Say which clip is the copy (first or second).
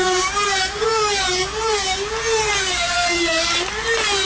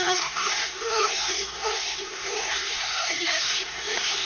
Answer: second